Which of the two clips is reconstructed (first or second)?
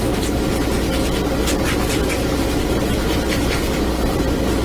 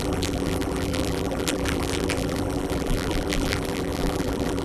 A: second